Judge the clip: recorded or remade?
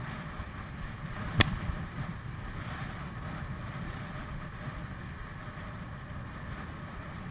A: recorded